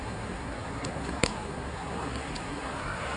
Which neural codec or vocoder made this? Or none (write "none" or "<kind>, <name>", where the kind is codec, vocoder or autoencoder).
codec, SNAC